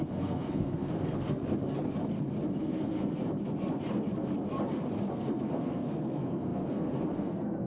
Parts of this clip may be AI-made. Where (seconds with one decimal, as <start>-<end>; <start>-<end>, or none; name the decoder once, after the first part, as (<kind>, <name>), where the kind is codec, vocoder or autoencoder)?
0.0-1.4 (codec, SNAC); 2.6-3.2; 5.1-7.7